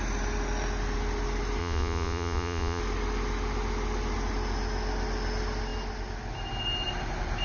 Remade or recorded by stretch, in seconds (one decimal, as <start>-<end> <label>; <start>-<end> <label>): 0.0-1.6 recorded; 1.6-2.8 remade; 2.8-7.4 recorded